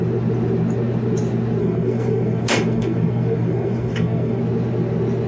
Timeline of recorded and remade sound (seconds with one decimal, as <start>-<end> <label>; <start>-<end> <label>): 0.0-1.6 recorded; 1.6-4.4 remade; 4.4-5.3 recorded